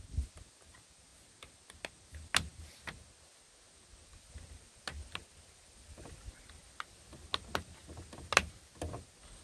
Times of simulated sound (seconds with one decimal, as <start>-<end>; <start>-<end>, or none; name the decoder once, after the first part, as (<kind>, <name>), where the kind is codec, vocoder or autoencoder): none